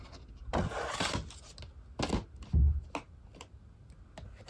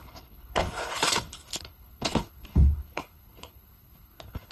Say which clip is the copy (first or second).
second